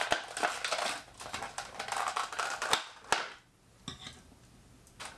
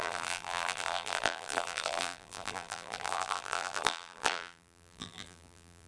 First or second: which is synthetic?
second